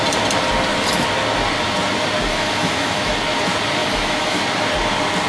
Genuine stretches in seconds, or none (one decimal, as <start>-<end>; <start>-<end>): 0.0-2.3; 3.1-3.8; 4.4-5.3